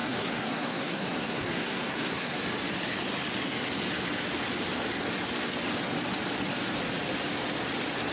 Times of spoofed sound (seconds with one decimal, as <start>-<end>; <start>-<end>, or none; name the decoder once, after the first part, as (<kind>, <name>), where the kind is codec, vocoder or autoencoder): 0.0-2.4 (codec, SNAC)